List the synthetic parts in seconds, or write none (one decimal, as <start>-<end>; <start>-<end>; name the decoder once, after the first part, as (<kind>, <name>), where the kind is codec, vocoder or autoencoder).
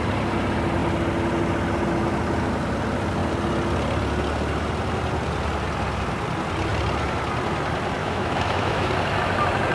8.0-8.9 (autoencoder, DAC-VAE)